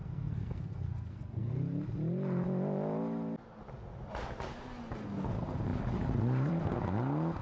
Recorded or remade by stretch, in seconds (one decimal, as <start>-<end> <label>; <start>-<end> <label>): 0.0-1.5 remade; 1.5-7.4 recorded